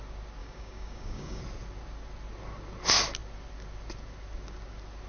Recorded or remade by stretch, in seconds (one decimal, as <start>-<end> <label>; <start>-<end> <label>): 0.0-0.4 recorded; 0.4-1.4 remade; 1.4-5.1 recorded